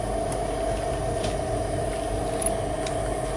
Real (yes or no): yes